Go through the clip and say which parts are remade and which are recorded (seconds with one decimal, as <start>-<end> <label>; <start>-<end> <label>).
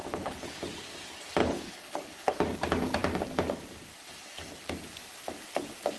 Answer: 0.0-0.6 remade; 0.6-1.4 recorded; 1.4-2.4 remade; 2.4-6.0 recorded